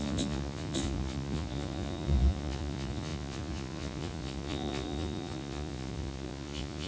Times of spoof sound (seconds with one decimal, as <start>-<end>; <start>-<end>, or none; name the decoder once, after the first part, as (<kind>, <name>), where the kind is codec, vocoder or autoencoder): 0.0-6.9 (vocoder, Vocos)